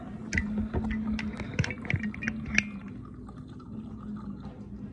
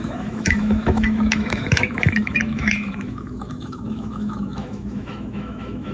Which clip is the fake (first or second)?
second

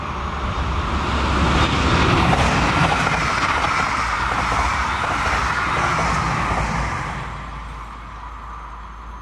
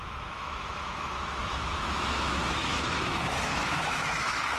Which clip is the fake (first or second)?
second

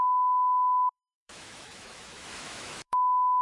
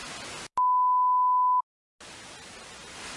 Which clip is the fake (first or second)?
first